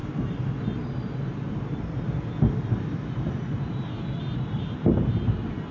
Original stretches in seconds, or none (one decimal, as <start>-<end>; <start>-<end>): 0.0-5.7